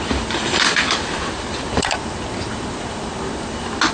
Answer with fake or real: real